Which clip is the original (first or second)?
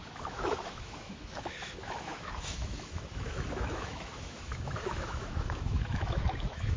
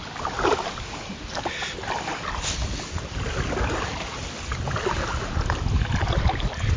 second